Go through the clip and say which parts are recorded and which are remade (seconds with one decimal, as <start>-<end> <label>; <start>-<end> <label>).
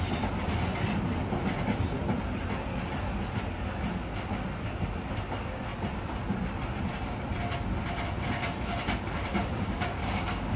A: 0.0-9.3 recorded; 9.3-10.6 remade